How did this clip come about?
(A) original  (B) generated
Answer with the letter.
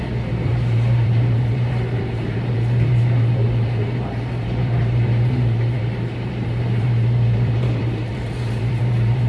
B